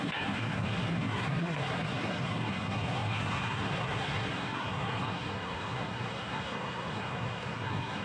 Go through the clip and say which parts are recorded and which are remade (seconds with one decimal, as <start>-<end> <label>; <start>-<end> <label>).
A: 0.0-8.0 remade